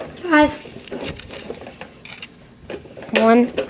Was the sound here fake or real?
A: real